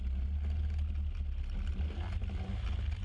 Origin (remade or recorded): recorded